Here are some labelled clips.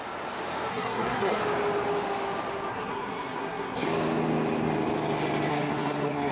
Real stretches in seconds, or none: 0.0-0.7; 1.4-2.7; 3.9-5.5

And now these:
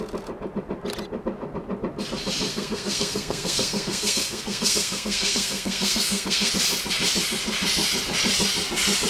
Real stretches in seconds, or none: 0.0-2.5; 6.5-9.1

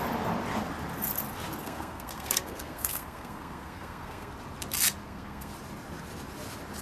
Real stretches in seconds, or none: 0.0-1.6; 4.3-5.0; 5.5-6.8

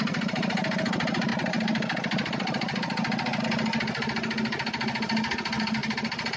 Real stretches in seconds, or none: 0.0-6.4